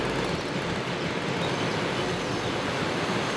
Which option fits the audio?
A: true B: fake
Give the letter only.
A